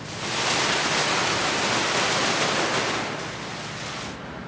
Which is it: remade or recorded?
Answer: recorded